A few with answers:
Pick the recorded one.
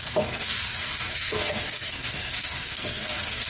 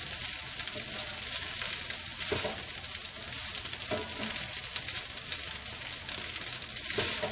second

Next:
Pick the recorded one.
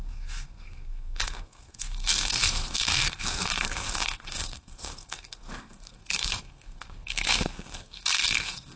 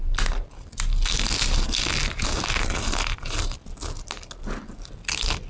second